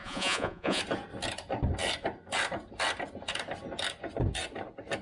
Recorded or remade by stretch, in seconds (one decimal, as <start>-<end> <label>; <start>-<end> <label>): 0.0-0.8 remade; 0.8-5.0 recorded